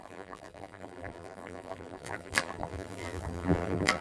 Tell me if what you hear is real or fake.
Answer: fake